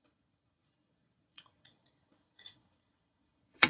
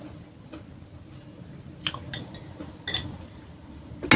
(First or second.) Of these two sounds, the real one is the second